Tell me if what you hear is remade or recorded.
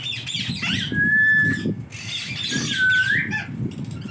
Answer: recorded